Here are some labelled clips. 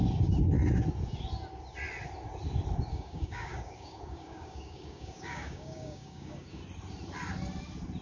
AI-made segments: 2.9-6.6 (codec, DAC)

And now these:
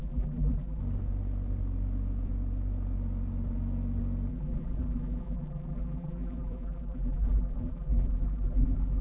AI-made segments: 0.0-0.8 (vocoder, BigVGAN v2); 4.3-9.0

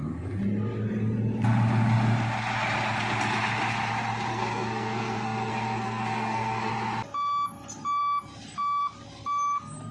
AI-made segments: 4.3-6.7 (codec, SNAC)

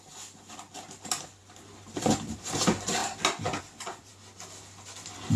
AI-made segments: none